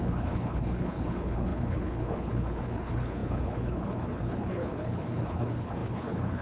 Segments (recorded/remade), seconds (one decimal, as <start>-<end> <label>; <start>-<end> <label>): 0.0-6.4 remade